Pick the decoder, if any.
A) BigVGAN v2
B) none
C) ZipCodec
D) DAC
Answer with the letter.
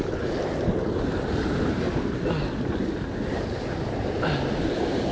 B